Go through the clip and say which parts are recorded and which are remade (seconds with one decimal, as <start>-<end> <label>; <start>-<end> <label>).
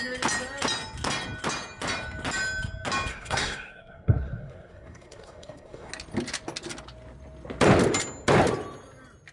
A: 0.0-3.1 recorded; 3.1-5.9 remade; 5.9-9.3 recorded